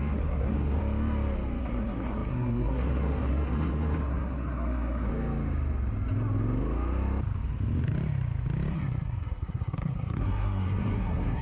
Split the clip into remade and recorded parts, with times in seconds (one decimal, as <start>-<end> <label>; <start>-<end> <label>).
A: 0.0-0.8 remade; 0.8-1.6 recorded; 1.6-5.1 remade; 5.1-8.7 recorded; 8.7-11.4 remade